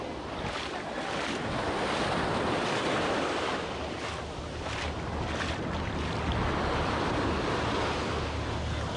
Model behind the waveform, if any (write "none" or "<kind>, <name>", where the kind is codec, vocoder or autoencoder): none